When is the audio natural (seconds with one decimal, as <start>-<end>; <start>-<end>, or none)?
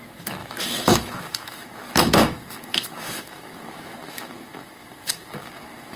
none